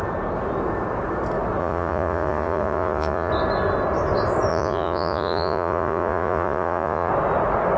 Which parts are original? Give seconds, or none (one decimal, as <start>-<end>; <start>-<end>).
0.0-1.6; 3.3-4.5; 7.1-7.8